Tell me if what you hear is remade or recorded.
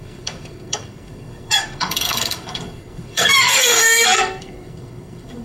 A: remade